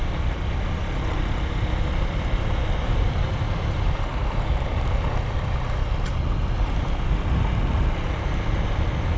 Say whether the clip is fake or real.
real